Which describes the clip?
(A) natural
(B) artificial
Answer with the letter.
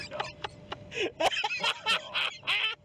A